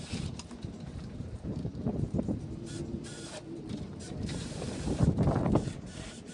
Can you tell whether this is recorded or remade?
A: remade